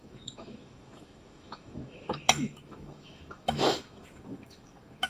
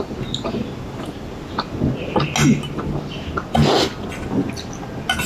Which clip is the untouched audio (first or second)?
second